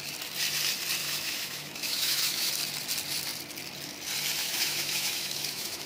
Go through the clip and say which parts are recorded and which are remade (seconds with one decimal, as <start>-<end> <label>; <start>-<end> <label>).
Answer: 0.0-1.0 recorded; 1.0-2.5 remade; 2.5-4.4 recorded; 4.4-5.9 remade